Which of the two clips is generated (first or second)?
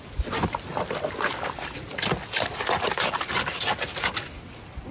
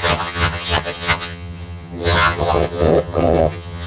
second